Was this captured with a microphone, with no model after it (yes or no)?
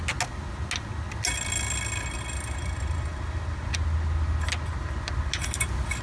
yes